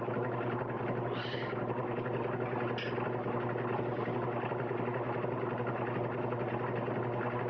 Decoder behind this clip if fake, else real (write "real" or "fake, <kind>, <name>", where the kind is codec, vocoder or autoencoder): real